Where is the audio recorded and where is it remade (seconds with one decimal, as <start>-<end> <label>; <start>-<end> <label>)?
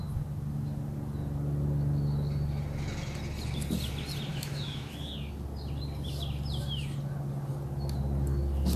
0.0-4.3 recorded; 4.3-4.9 remade; 4.9-8.8 recorded